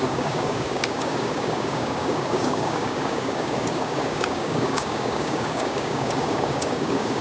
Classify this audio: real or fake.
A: fake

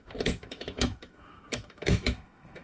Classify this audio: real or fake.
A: fake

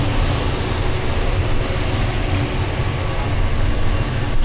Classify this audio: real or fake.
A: real